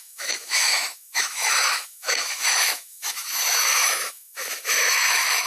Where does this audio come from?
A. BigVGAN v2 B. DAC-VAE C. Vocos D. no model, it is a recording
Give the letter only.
B